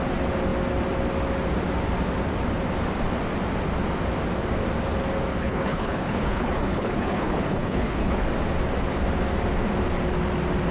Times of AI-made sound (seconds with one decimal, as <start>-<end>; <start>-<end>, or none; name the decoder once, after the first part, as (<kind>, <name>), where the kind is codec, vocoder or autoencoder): 5.3-8.3 (codec, HILCodec)